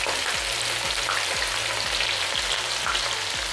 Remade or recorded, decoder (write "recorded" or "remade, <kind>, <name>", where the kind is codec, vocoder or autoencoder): recorded